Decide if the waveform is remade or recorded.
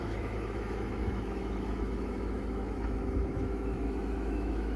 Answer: remade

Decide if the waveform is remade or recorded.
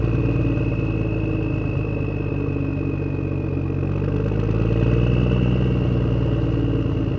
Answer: recorded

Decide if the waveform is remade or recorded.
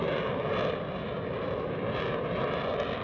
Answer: recorded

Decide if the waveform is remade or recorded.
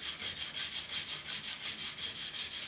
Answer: recorded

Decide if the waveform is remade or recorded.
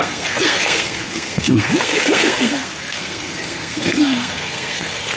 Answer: remade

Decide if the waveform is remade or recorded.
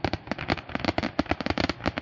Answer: recorded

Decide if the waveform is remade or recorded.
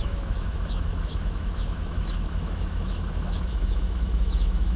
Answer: remade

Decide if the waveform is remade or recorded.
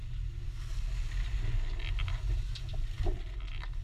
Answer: recorded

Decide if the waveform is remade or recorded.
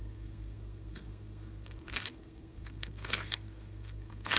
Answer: remade